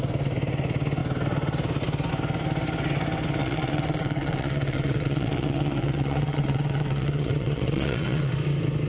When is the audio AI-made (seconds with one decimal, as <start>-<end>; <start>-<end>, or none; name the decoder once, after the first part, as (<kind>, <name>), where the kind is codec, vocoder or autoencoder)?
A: 3.4-8.3 (vocoder, WaveNeXt)